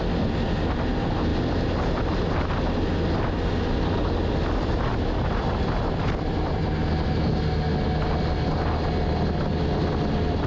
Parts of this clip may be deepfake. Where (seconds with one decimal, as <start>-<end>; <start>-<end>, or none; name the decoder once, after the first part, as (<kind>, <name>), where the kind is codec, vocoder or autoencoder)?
4.9-6.6 (vocoder, BigVGAN v2)